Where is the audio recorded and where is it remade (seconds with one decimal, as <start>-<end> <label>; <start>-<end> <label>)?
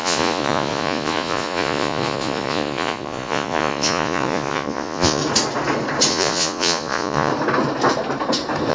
0.0-5.2 remade; 5.2-6.1 recorded; 6.1-7.3 remade; 7.3-8.7 recorded